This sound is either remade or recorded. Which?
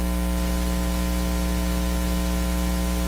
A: recorded